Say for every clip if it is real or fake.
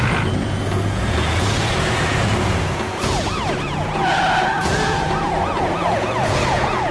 fake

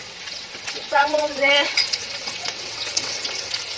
fake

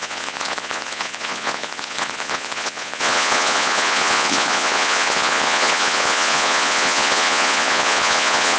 fake